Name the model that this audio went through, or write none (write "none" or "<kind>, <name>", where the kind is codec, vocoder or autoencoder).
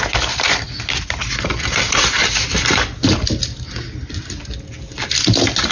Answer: none